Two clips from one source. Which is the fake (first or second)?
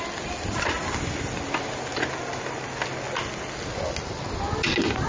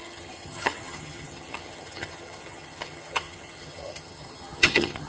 second